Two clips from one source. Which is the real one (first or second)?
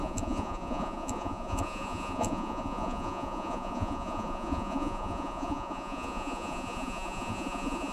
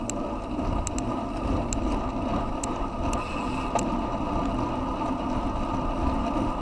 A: second